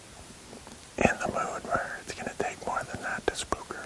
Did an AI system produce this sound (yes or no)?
no